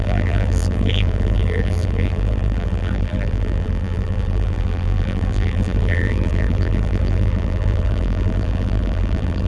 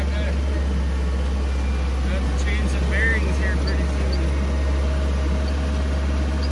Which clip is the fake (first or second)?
first